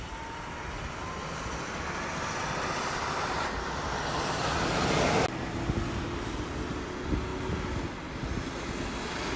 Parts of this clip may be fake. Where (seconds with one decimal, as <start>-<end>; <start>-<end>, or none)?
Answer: none